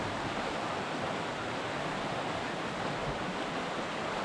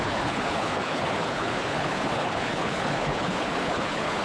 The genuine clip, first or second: first